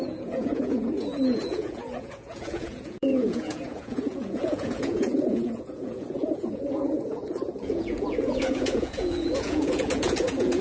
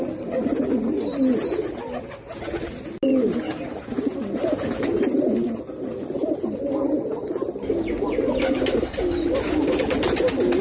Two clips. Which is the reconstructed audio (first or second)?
first